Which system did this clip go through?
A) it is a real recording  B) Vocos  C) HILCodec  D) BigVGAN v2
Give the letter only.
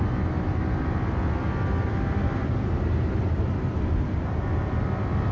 A